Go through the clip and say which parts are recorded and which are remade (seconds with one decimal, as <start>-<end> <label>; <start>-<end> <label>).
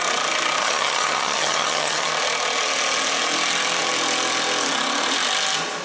0.0-0.6 recorded; 0.6-2.1 remade; 2.1-5.8 recorded